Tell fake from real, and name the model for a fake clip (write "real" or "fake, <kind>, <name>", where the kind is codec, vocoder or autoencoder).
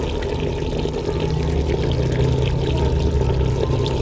real